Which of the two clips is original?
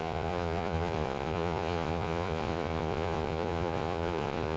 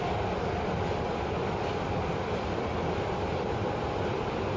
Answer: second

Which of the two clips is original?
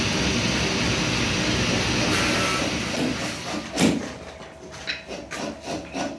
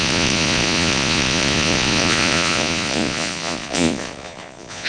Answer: first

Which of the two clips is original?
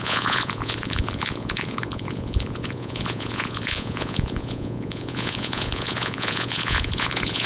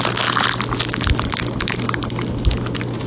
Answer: second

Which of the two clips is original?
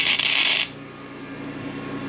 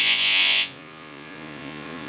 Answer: first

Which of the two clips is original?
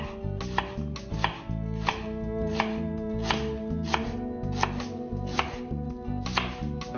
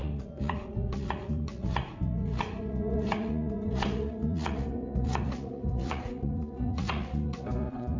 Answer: first